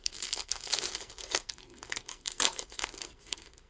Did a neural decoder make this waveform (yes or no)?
yes